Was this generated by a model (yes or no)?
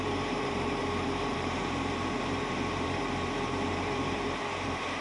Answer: yes